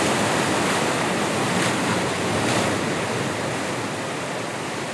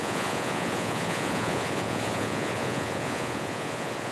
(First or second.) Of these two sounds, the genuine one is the first